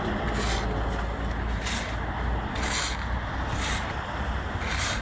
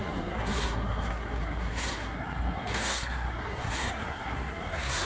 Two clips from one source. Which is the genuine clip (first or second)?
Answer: first